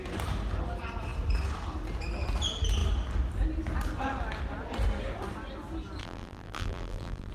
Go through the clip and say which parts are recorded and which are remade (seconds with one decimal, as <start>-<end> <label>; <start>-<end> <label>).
0.0-6.0 recorded; 6.0-7.3 remade